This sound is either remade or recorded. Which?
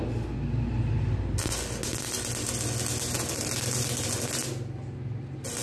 recorded